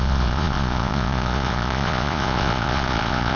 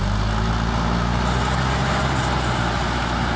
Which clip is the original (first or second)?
second